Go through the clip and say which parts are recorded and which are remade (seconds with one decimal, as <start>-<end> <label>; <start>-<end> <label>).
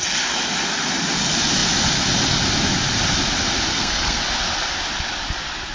0.0-3.7 recorded; 3.7-4.2 remade; 4.2-5.7 recorded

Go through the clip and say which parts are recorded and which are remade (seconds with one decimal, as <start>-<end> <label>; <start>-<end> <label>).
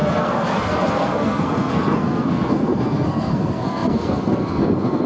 0.0-5.1 remade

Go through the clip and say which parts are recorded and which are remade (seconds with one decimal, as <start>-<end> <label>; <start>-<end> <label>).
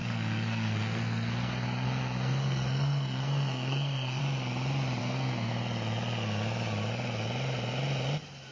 0.0-4.2 remade; 4.2-5.0 recorded; 5.0-5.5 remade; 5.5-8.5 recorded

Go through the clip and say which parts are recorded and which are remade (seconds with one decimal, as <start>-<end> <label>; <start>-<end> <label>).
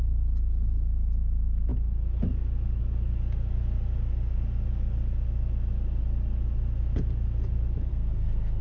0.0-7.9 recorded; 7.9-8.6 remade